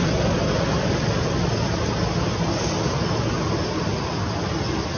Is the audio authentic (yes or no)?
yes